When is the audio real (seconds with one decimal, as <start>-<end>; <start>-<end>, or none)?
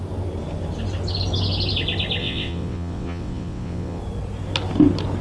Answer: 0.0-2.2; 4.0-5.2